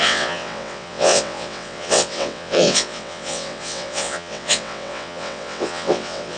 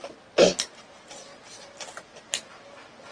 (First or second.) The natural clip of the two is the second